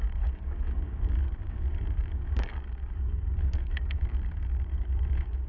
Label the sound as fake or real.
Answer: fake